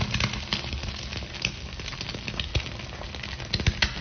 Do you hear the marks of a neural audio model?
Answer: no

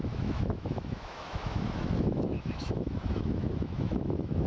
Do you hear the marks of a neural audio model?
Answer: yes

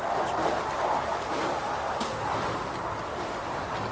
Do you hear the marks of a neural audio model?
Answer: no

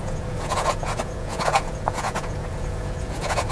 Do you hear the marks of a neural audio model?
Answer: yes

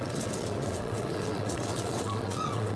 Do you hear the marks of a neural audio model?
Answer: yes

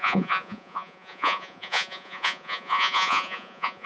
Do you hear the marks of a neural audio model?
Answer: yes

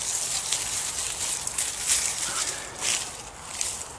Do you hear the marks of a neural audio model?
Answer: no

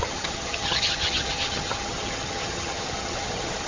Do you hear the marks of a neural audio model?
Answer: yes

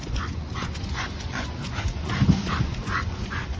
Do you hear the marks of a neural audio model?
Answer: yes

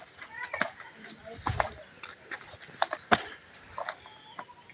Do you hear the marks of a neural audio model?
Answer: no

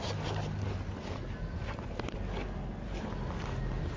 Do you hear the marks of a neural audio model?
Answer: no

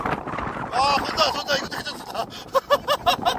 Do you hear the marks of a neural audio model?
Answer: no